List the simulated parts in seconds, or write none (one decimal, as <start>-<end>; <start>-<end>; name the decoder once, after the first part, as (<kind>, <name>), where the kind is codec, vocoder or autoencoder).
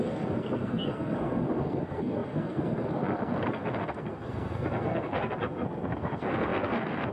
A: 0.0-7.1 (codec, SNAC)